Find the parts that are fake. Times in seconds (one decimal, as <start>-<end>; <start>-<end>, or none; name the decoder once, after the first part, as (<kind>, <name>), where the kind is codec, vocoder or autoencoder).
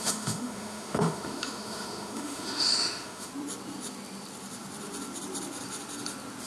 0.0-3.3 (autoencoder, DAC-VAE)